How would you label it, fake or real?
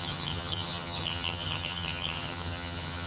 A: fake